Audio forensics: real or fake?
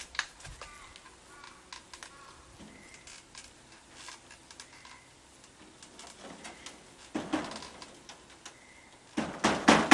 real